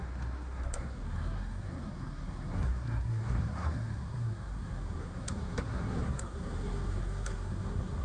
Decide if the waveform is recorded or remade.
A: remade